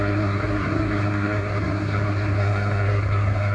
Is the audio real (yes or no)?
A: no